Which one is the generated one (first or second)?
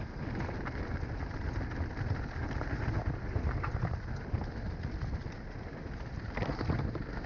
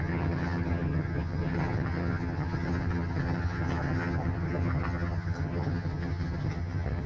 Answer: second